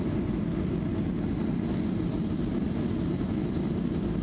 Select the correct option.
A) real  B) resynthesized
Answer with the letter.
A